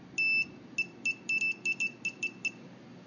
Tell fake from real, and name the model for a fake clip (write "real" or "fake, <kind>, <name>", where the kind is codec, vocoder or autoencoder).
real